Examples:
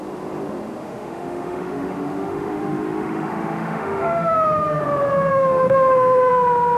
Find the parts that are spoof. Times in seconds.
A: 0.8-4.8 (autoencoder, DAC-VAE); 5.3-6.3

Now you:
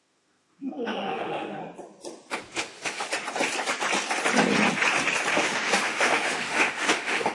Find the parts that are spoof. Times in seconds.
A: 0.0-1.6 (autoencoder, DAC-VAE); 2.5-3.1; 5.3-7.3